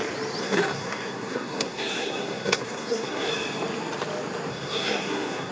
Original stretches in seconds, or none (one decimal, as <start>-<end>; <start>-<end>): 0.0-0.4; 3.3-4.5